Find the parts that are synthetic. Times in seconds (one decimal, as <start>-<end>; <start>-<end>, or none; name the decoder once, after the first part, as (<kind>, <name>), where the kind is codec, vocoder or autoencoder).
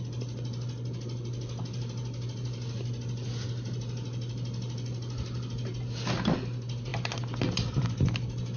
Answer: none